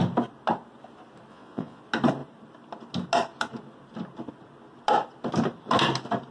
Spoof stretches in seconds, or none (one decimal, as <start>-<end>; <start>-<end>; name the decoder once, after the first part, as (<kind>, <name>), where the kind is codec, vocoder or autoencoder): 1.3-1.8 (vocoder, Vocos)